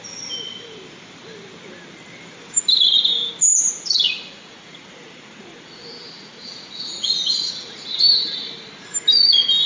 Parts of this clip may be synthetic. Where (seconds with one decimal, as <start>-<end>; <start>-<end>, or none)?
3.5-7.5